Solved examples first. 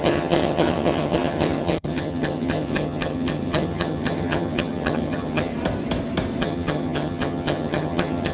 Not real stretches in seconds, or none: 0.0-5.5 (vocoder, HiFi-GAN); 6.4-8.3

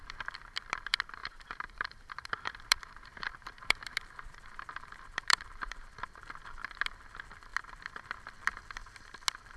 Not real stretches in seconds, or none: 1.2-6.0 (vocoder, BigVGAN v2)

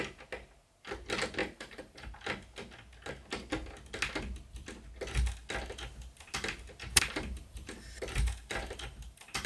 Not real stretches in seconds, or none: 1.4-2.1 (vocoder, BigVGAN v2); 6.9-9.5

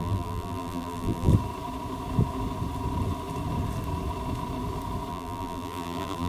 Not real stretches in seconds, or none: 0.0-1.3 (vocoder, BigVGAN v2); 5.1-6.3

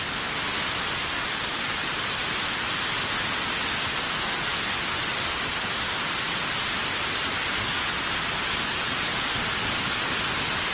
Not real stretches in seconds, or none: none

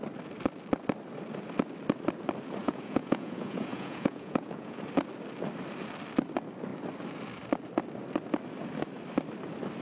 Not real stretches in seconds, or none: 2.6-4.8 (vocoder, Vocos)

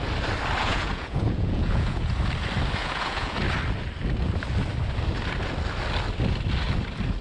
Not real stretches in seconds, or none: 0.6-2.1 (vocoder, Vocos); 2.8-3.4

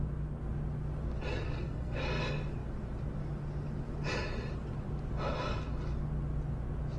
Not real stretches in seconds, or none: 1.3-2.2 (codec, SNAC)